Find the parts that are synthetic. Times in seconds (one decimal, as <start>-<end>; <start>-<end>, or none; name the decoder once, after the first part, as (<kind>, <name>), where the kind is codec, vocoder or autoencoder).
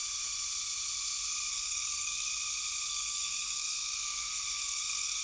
1.5-2.3 (codec, SNAC); 2.9-5.2